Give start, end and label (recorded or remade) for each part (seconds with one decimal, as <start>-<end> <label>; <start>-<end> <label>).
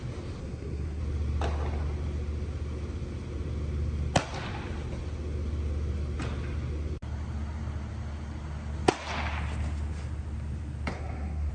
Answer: 0.0-0.4 recorded; 0.4-1.0 remade; 1.0-10.9 recorded; 10.9-11.5 remade